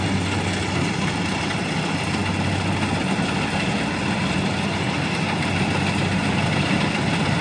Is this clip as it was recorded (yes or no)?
yes